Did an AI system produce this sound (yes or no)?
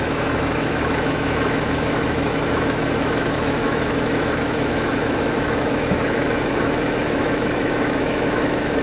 yes